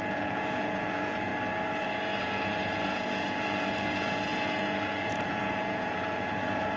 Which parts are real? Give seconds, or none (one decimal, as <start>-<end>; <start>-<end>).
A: 1.3-2.2